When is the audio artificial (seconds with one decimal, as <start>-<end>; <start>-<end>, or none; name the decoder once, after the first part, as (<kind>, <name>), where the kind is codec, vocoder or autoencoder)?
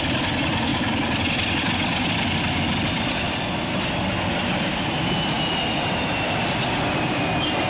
none